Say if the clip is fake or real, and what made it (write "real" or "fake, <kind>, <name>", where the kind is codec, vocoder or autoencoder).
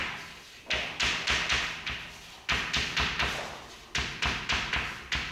real